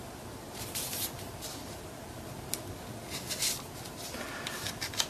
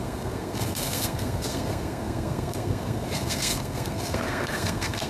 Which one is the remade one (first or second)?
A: second